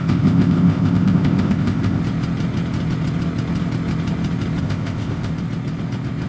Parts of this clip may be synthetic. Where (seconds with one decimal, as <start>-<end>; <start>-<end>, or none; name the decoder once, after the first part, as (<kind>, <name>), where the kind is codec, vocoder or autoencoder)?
0.0-2.0 (codec, ZipCodec); 4.6-5.3